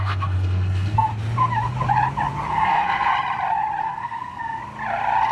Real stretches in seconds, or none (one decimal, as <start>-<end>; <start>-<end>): 1.1-2.5; 3.1-3.8; 4.6-5.3